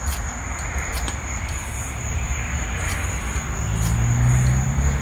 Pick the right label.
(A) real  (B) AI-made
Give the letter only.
A